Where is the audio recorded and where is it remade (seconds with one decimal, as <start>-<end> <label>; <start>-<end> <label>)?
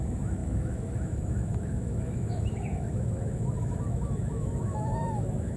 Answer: 0.0-5.6 remade